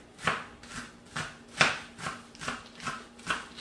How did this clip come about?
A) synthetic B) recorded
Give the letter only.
B